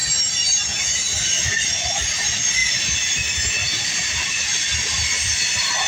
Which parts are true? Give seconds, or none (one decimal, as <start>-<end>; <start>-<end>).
0.0-5.9